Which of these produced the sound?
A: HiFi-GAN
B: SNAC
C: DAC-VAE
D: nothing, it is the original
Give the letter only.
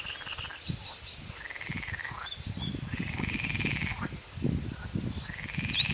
D